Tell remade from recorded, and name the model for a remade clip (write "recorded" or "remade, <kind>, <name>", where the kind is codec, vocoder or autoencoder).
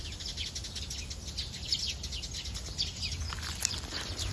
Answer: recorded